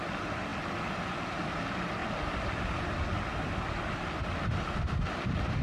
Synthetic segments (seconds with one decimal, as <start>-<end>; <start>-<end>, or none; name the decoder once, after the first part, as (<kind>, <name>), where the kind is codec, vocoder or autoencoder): none